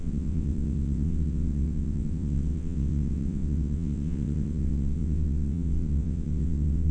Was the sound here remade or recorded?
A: remade